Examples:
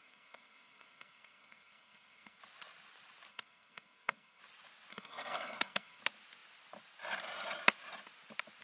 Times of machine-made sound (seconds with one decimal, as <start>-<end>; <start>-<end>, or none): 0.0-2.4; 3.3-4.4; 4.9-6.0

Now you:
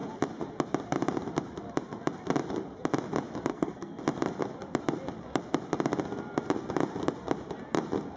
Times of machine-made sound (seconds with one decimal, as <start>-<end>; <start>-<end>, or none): 3.5-4.0

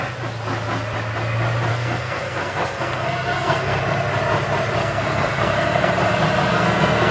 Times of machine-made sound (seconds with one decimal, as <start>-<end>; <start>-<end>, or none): 1.7-3.8; 4.8-5.9; 6.5-7.1

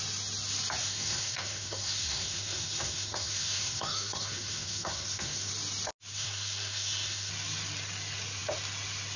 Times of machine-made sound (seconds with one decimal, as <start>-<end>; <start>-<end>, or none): 0.8-5.5; 6.1-7.3

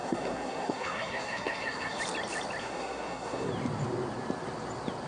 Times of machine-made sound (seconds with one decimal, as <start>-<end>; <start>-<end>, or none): 0.0-2.0; 2.6-3.5